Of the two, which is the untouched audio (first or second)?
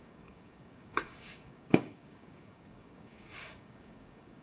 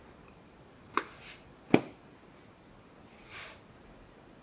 second